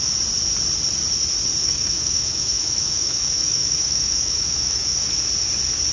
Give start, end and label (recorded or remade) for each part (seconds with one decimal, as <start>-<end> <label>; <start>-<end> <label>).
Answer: 0.0-1.6 recorded; 1.6-5.1 remade; 5.1-5.9 recorded